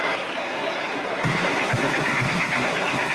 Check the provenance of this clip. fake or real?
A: fake